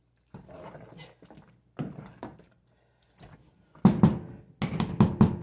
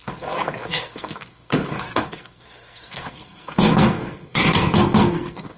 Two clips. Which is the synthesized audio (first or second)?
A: second